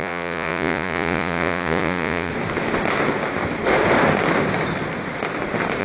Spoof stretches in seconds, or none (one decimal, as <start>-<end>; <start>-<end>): 0.0-2.3